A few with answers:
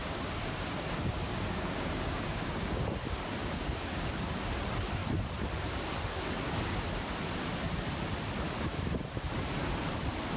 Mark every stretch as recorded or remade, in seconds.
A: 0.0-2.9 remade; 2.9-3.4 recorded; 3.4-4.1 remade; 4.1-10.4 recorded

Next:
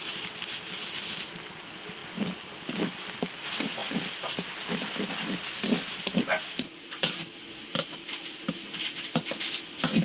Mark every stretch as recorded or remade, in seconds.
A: 0.0-10.0 recorded

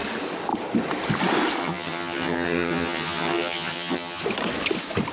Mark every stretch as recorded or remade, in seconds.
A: 0.0-1.6 recorded; 1.6-4.2 remade; 4.2-5.1 recorded

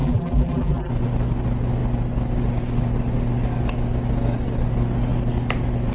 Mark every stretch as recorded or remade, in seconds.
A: 0.0-0.9 remade; 0.9-5.9 recorded

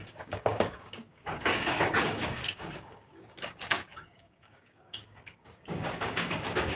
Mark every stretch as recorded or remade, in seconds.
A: 0.0-6.8 remade

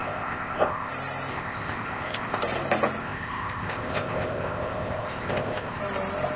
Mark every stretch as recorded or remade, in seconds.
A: 0.0-0.9 remade; 0.9-1.3 recorded; 1.3-2.4 remade; 2.4-3.0 recorded; 3.0-5.8 remade; 5.8-6.4 recorded